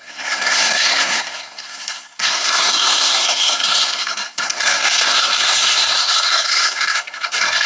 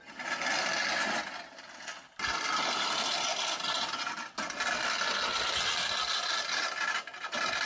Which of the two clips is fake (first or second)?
first